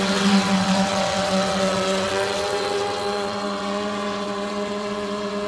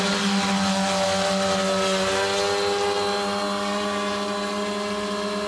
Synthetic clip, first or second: first